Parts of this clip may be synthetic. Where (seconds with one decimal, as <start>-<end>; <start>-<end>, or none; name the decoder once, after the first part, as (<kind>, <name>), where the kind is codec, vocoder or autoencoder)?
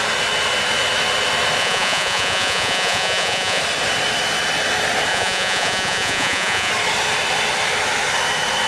1.6-3.6 (vocoder, Vocos); 5.1-6.7